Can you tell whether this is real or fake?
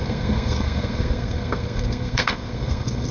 fake